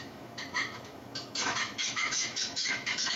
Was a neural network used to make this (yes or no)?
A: yes